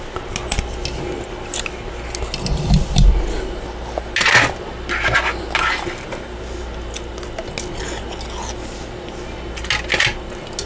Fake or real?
real